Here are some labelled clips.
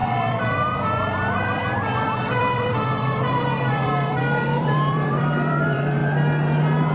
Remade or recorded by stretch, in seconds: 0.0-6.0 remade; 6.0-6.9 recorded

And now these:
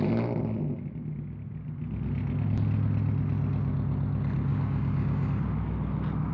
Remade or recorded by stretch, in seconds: 0.0-4.5 recorded; 4.5-5.3 remade; 5.3-6.3 recorded

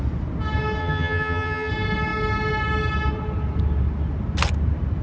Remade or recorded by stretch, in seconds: 0.0-0.8 recorded; 0.8-1.7 remade; 1.7-5.0 recorded

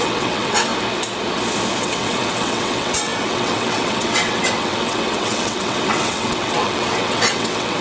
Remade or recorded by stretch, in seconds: 0.0-0.7 remade; 0.7-1.8 recorded; 1.8-7.8 remade

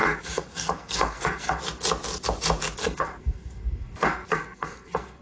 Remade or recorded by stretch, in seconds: 0.0-1.6 remade; 1.6-2.8 recorded; 2.8-5.2 remade

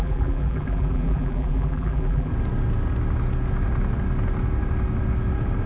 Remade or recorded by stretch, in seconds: 0.0-2.3 remade; 2.3-5.7 recorded

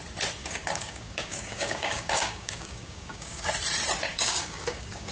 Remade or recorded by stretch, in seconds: 0.0-0.4 recorded; 0.4-3.5 remade; 3.5-4.1 recorded; 4.1-5.1 remade

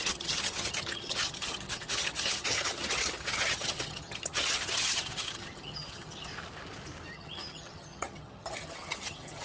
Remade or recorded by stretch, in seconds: 0.0-6.3 remade; 6.3-7.1 recorded; 7.1-9.4 remade